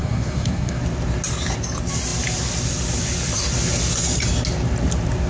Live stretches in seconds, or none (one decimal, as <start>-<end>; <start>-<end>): 0.8-5.3